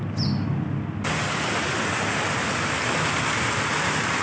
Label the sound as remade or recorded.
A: recorded